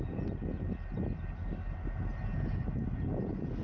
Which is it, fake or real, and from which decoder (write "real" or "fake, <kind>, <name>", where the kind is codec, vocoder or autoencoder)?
real